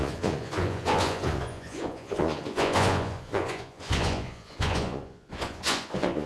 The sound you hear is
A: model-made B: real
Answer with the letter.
A